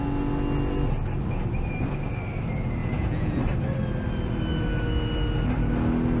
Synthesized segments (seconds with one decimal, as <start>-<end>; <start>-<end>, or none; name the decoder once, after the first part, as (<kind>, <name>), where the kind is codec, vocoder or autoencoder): 2.8-3.4 (vocoder, Vocos)